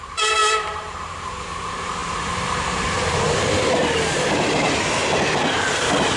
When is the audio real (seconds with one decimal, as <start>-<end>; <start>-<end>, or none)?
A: 5.0-5.5